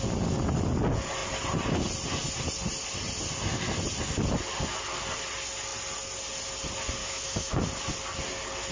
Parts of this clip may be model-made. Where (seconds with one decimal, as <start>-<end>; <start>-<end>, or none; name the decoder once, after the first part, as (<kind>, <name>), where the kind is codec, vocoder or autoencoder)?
7.0-7.5 (autoencoder, DAC-VAE)